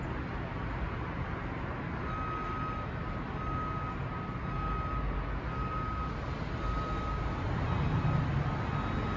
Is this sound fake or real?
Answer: real